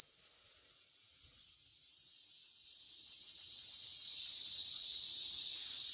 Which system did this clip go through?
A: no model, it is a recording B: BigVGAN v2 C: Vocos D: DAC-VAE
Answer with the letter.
A